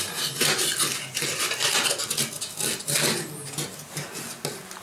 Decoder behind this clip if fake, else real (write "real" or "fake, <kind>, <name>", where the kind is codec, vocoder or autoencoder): real